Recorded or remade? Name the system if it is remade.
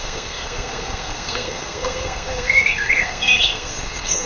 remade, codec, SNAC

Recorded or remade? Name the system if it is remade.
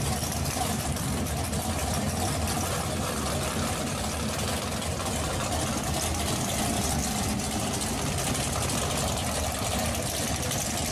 recorded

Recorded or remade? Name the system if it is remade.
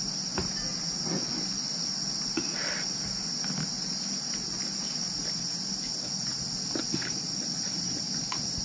recorded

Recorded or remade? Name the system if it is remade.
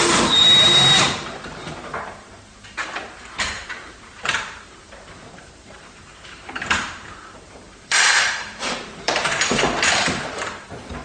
remade, vocoder, BigVGAN v2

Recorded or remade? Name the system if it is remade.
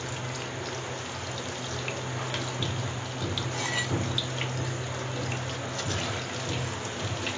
recorded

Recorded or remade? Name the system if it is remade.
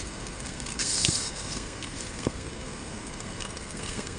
remade, codec, SNAC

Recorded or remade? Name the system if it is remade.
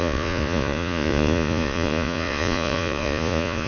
remade, vocoder, Vocos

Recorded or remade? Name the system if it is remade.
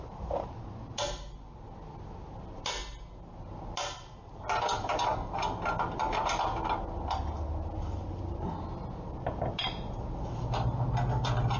recorded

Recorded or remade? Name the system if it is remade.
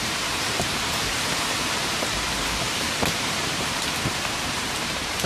remade, vocoder, BigVGAN v2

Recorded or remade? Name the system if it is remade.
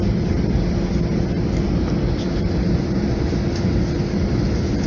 recorded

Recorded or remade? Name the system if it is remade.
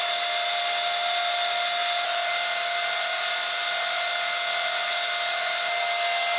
recorded